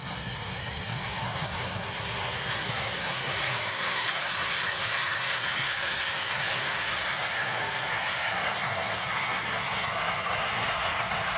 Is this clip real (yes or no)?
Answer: no